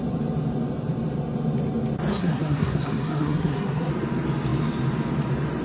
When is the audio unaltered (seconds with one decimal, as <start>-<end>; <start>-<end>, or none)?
0.0-2.1; 3.9-5.6